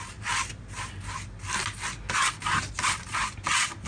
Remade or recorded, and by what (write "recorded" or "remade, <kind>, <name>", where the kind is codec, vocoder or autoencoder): recorded